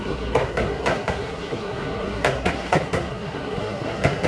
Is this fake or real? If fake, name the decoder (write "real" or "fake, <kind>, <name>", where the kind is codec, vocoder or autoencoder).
fake, codec, SNAC